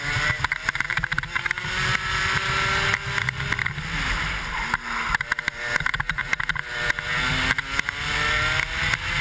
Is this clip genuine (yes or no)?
yes